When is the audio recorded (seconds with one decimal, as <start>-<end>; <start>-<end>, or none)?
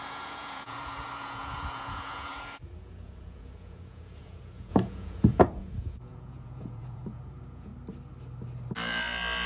7.7-9.5